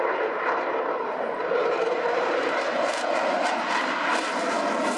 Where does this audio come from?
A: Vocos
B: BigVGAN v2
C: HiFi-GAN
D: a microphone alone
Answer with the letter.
B